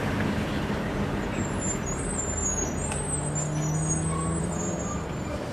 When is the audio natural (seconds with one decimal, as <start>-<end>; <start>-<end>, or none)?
2.4-4.4